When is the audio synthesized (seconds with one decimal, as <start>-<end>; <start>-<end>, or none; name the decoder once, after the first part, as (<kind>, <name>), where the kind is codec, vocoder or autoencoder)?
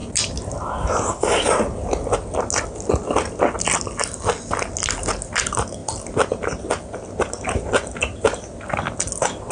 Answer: none